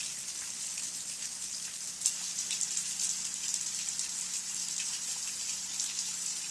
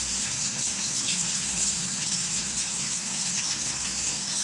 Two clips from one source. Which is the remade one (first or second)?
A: second